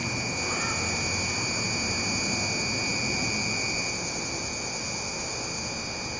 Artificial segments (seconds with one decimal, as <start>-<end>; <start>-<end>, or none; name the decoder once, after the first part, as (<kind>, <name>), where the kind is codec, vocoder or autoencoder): 2.9-5.7 (vocoder, BigVGAN v2)